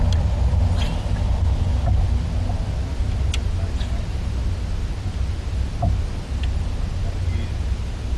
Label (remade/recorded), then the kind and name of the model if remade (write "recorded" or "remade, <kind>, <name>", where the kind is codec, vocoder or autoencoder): recorded